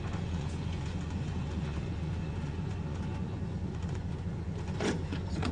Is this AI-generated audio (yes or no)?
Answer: yes